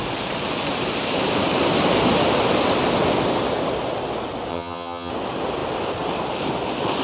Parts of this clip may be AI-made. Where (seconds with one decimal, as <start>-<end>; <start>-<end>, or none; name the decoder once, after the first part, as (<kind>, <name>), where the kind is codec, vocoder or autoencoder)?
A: 4.5-5.1 (vocoder, HiFi-GAN)